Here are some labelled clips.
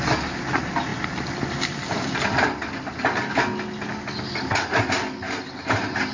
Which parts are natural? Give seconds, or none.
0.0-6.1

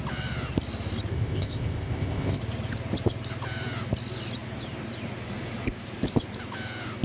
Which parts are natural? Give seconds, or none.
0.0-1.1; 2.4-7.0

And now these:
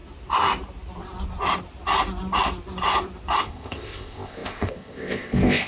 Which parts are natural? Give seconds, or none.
0.0-3.4